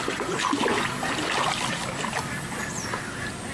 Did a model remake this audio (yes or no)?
no